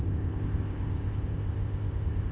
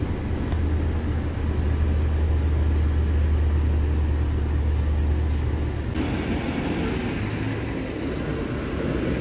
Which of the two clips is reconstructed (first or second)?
first